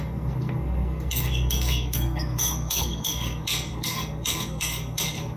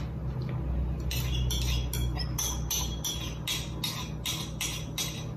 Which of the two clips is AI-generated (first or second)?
first